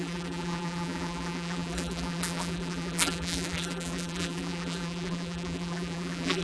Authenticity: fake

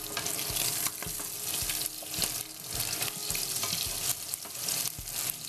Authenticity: real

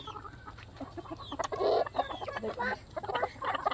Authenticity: real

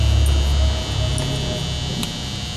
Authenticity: real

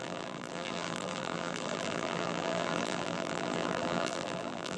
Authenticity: fake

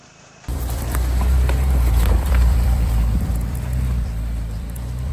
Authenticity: fake